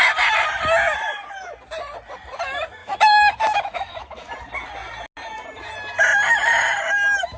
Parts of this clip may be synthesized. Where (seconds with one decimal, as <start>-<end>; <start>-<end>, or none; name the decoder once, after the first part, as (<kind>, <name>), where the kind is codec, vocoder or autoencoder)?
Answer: 2.8-4.3 (autoencoder, DAC-VAE)